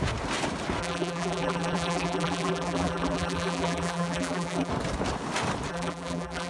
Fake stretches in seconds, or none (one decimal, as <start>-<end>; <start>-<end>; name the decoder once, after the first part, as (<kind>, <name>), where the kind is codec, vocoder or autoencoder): 0.8-4.7 (vocoder, BigVGAN v2); 5.7-6.5